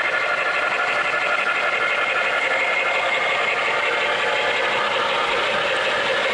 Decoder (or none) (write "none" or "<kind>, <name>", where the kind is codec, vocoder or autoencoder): none